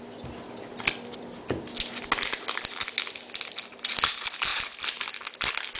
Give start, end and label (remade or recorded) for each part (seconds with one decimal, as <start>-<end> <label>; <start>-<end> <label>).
0.0-5.8 recorded